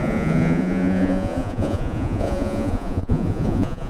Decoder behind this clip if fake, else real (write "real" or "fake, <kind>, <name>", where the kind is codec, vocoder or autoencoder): fake, vocoder, Vocos